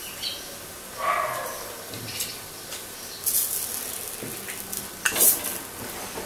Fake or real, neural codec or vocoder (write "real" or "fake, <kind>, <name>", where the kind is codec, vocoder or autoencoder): real